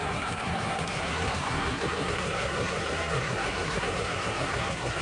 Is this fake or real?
fake